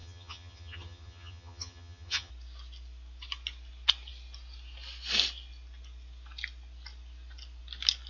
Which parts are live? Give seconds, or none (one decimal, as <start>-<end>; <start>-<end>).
2.3-8.1